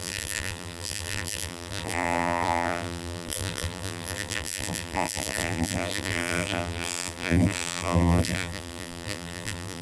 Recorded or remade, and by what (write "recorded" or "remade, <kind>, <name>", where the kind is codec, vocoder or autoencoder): remade, vocoder, BigVGAN v2